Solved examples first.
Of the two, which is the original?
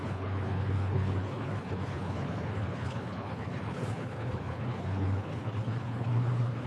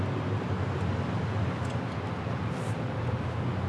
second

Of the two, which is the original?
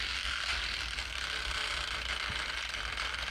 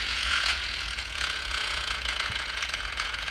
first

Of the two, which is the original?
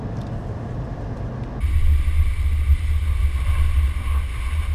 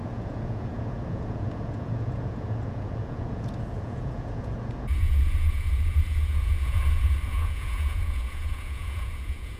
first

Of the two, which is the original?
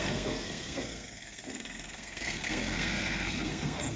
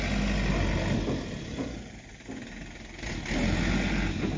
second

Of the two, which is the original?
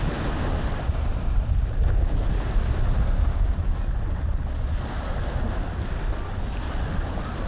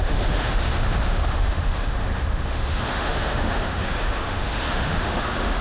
first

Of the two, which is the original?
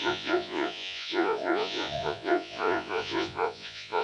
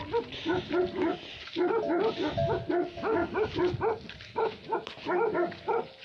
second